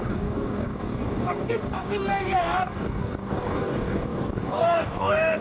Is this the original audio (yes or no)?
no